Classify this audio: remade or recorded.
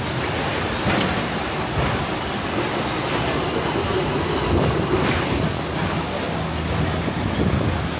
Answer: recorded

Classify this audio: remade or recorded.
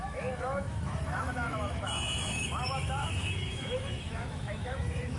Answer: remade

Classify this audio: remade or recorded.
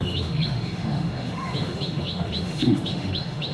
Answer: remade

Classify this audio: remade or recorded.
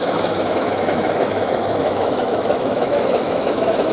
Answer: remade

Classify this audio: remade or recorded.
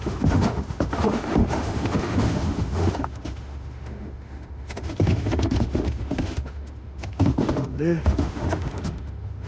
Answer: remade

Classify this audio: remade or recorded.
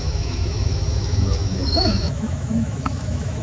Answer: remade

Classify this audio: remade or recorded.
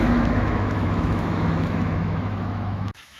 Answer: remade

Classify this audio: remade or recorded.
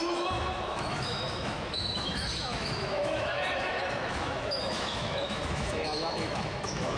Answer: remade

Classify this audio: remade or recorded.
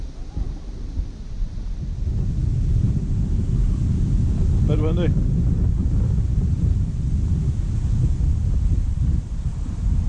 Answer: recorded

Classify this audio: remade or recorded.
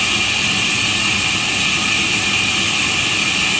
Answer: recorded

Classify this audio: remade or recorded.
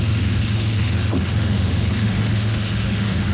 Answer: remade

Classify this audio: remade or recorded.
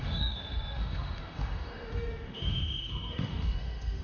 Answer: remade